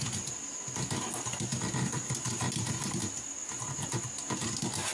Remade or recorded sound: recorded